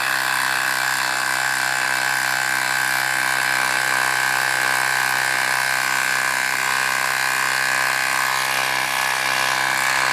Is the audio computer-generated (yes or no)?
no